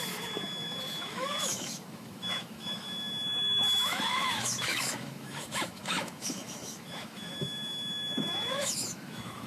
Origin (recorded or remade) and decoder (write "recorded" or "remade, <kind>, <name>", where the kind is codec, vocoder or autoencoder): remade, autoencoder, DAC-VAE